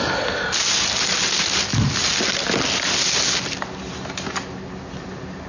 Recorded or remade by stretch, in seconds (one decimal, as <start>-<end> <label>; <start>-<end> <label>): 0.0-5.5 recorded